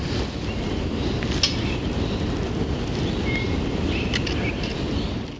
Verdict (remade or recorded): recorded